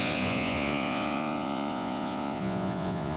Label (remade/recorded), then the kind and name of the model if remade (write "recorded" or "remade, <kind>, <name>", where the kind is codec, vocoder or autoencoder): remade, vocoder, Vocos